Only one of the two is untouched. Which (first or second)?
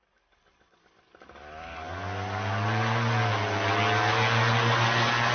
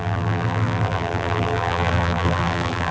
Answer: first